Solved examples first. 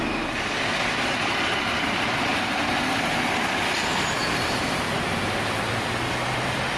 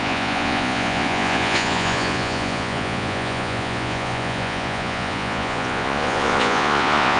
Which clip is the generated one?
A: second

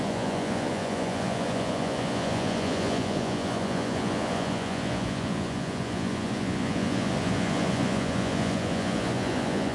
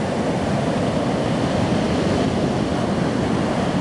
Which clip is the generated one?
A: first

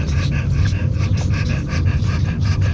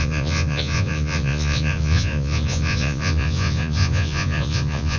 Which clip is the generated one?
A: second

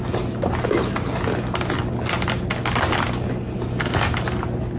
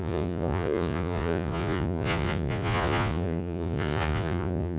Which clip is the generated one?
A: second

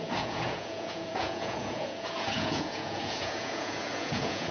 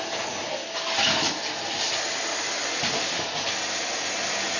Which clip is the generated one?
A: first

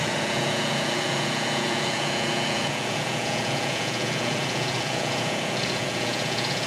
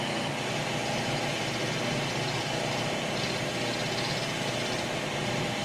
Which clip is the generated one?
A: first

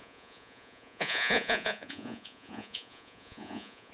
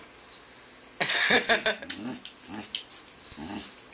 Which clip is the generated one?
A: first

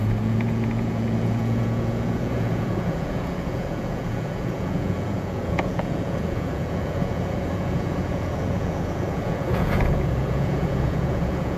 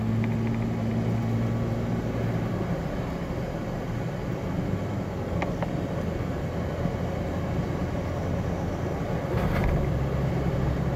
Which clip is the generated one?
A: first